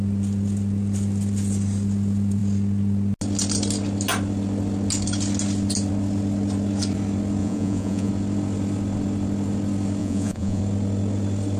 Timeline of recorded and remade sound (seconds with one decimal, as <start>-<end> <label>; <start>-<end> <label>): 0.0-7.4 recorded; 7.4-8.1 remade; 8.1-10.0 recorded; 10.0-10.6 remade; 10.6-11.6 recorded